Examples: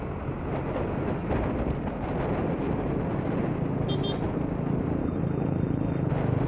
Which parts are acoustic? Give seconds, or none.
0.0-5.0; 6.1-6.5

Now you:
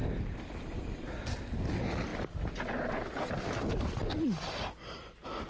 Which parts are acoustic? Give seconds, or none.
0.0-5.5